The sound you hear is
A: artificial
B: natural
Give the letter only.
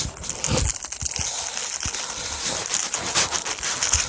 B